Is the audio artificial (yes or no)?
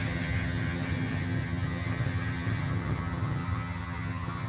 yes